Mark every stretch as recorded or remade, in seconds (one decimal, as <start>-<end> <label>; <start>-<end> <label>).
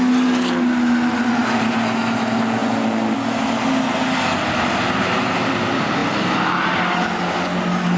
0.0-8.0 recorded